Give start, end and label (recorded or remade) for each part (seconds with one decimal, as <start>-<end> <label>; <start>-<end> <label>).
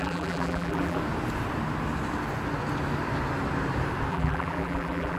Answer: 0.0-1.0 remade; 1.0-4.1 recorded; 4.1-5.2 remade